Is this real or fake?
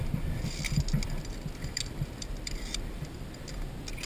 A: real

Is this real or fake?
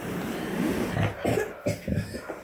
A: real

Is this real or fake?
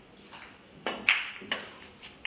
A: real